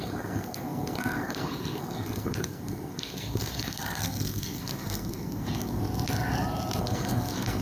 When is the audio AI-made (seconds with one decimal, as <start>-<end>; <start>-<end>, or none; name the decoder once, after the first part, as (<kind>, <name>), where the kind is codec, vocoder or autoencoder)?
0.0-5.8 (codec, SNAC); 6.8-7.6